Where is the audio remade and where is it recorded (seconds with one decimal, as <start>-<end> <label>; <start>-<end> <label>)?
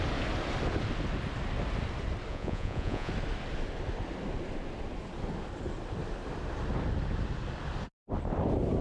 0.0-2.3 recorded; 2.3-3.1 remade; 3.1-8.8 recorded